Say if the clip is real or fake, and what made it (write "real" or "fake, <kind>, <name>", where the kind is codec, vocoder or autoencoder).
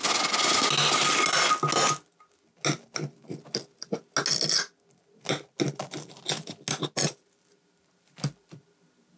real